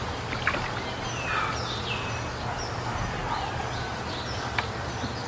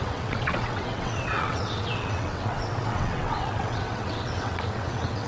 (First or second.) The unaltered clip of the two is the first